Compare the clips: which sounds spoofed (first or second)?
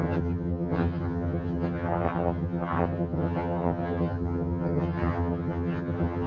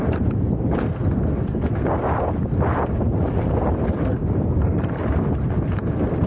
first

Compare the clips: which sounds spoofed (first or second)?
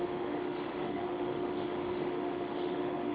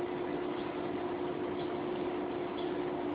first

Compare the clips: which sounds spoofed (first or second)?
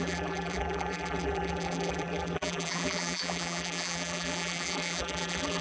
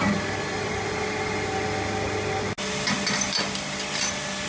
first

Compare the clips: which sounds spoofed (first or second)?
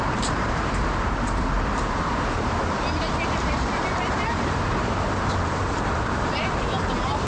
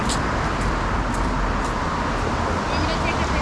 first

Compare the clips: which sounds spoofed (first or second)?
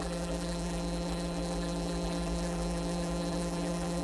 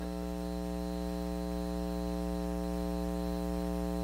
first